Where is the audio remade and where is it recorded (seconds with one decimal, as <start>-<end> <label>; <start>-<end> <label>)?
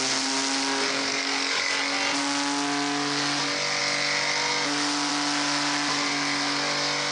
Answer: 0.0-1.1 recorded; 1.1-1.7 remade; 1.7-7.1 recorded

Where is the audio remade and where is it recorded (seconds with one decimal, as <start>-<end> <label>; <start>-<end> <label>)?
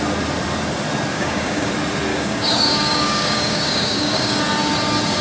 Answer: 0.0-1.1 recorded; 1.1-1.7 remade; 1.7-2.1 recorded; 2.1-4.4 remade; 4.4-5.2 recorded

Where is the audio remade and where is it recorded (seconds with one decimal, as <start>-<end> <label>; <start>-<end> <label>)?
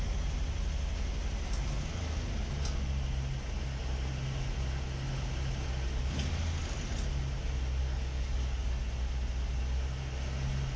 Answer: 0.0-7.8 recorded; 7.8-8.7 remade; 8.7-10.8 recorded